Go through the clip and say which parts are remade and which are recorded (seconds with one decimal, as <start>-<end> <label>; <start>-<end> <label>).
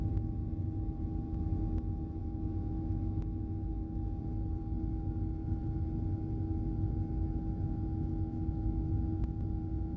0.0-2.2 recorded; 2.2-4.2 remade; 4.2-8.1 recorded; 8.1-8.9 remade; 8.9-10.0 recorded